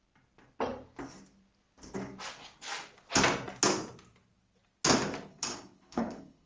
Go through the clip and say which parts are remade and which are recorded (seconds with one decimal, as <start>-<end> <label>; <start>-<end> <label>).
0.0-5.3 recorded; 5.3-6.5 remade

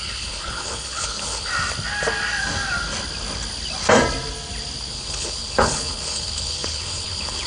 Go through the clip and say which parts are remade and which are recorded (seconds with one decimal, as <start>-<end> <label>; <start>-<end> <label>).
0.0-1.5 remade; 1.5-4.9 recorded; 4.9-7.5 remade

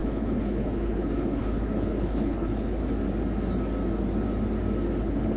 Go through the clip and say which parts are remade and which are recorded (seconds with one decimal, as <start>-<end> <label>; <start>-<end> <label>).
0.0-2.8 remade; 2.8-5.0 recorded; 5.0-5.4 remade

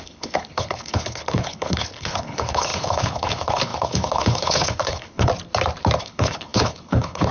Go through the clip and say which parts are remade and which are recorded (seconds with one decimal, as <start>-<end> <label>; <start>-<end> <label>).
0.0-5.3 remade; 5.3-6.0 recorded; 6.0-7.3 remade

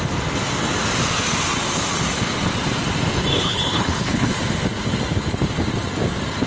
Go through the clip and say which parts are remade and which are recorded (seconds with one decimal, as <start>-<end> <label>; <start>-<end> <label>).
0.0-3.3 recorded; 3.3-4.3 remade; 4.3-6.5 recorded

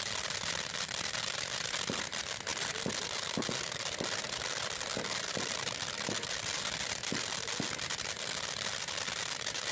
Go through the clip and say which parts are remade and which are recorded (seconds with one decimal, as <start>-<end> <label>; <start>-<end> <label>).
0.0-9.7 recorded

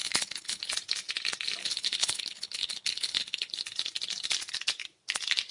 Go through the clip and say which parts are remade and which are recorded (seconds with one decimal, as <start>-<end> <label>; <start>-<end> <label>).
0.0-0.7 remade; 0.7-1.6 recorded; 1.6-3.5 remade; 3.5-5.5 recorded